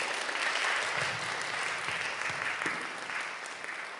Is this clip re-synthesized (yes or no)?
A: no